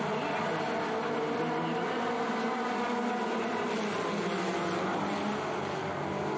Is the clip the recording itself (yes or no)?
yes